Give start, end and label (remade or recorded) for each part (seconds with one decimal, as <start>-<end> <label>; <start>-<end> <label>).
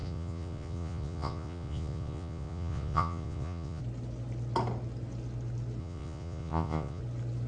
0.0-3.8 remade; 3.8-5.8 recorded; 5.8-7.0 remade; 7.0-7.5 recorded